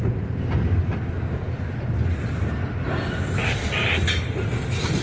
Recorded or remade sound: recorded